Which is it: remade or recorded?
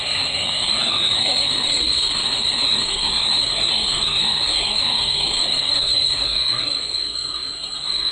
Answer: remade